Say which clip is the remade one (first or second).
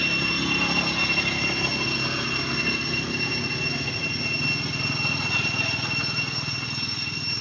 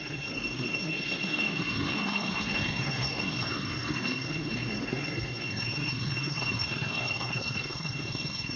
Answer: second